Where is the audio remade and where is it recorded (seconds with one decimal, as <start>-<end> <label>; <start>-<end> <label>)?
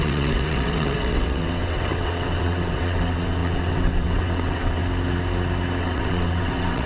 0.0-4.8 remade; 4.8-5.8 recorded; 5.8-6.9 remade